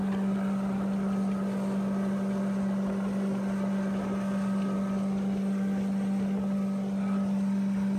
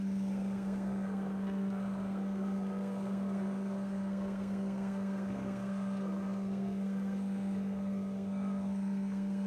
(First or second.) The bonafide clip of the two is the first